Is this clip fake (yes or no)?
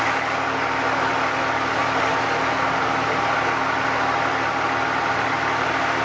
no